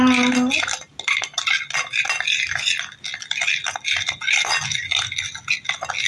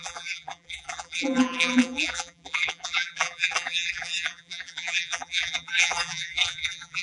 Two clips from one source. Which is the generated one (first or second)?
second